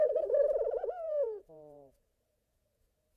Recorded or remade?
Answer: remade